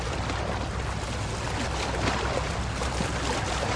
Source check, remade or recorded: recorded